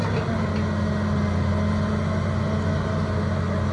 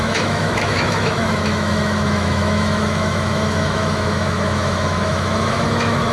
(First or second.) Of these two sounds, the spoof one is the second